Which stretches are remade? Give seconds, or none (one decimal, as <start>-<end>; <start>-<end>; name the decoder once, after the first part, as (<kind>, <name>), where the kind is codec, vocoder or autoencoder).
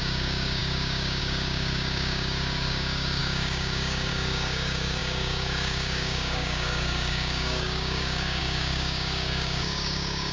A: 0.0-10.3 (codec, DAC)